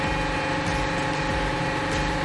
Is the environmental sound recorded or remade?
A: recorded